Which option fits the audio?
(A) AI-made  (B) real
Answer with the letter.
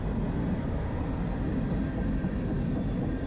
B